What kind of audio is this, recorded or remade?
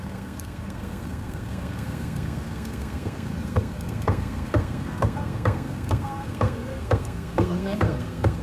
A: remade